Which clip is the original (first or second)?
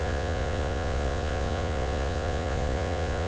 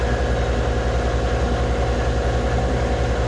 second